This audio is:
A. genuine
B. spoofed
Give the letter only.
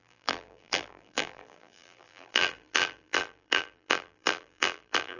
B